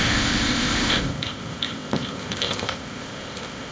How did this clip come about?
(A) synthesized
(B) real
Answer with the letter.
A